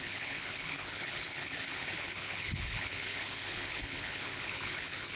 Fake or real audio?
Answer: fake